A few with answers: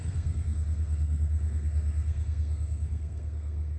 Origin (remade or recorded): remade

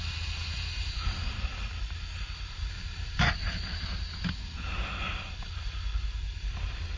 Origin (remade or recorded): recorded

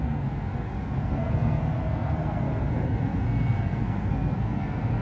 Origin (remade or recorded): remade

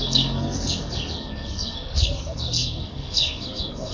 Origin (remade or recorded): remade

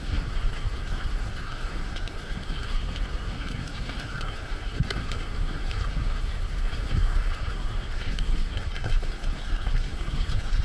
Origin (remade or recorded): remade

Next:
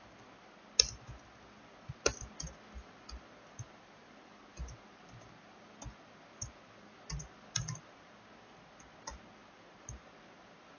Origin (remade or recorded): recorded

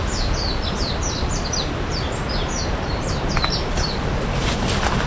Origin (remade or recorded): recorded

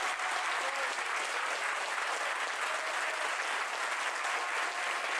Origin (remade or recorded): recorded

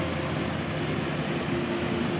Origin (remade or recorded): recorded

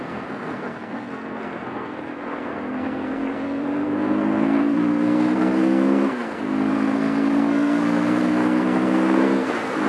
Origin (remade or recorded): remade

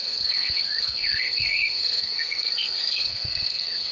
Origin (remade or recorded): remade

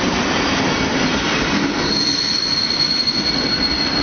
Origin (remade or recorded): recorded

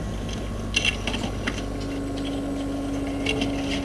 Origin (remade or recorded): recorded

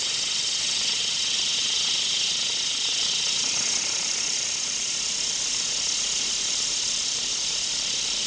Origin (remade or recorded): recorded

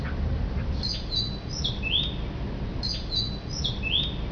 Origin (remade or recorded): recorded